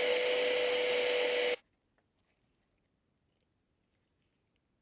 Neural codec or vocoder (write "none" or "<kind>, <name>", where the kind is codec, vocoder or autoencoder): none